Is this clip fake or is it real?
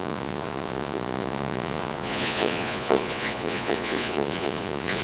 fake